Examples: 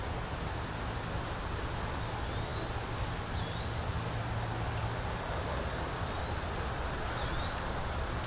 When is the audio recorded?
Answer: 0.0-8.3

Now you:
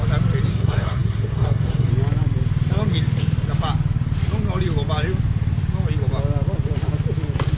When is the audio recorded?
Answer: 0.0-0.5; 1.9-7.6

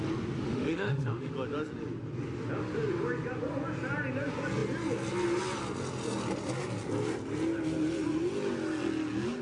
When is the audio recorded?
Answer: 0.0-0.5; 1.3-9.4

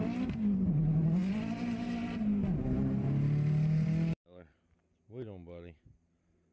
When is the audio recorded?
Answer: none

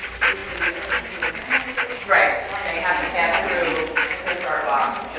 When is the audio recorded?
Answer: 0.0-3.7; 4.2-5.2